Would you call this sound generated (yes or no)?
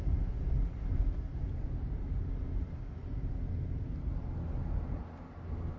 no